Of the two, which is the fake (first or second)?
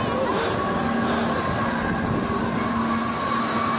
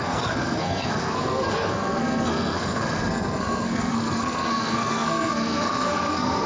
second